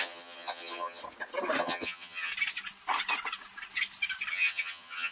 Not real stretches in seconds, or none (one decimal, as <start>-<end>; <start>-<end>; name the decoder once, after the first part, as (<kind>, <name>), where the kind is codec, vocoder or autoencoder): 0.0-1.0 (vocoder, HiFi-GAN); 1.6-2.3; 4.3-5.1